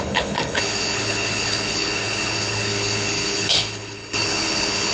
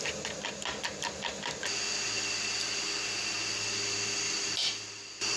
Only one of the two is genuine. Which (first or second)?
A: second